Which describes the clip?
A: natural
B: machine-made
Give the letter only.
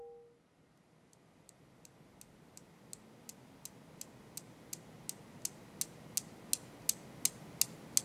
A